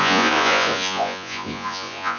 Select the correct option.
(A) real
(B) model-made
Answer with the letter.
B